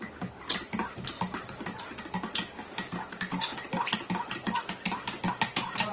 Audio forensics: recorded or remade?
recorded